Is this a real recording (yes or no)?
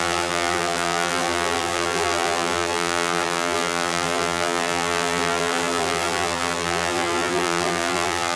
no